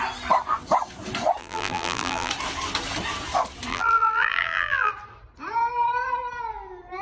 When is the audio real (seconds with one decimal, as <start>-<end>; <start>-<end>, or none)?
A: 0.0-1.4; 2.3-3.7; 4.9-7.0